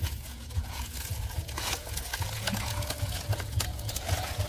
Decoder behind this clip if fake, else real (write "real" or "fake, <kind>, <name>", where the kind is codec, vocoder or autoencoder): fake, vocoder, Vocos